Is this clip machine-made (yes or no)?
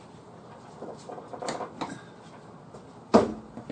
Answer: no